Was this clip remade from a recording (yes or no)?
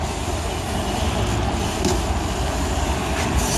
no